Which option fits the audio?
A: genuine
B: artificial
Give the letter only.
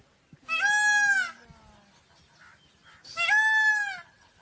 A